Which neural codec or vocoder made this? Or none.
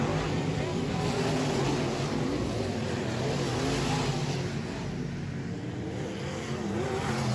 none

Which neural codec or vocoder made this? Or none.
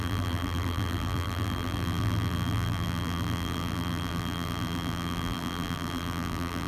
vocoder, BigVGAN v2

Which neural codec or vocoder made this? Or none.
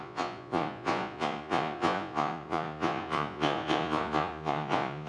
vocoder, Vocos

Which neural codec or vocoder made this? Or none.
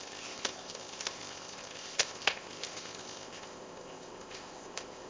codec, ZipCodec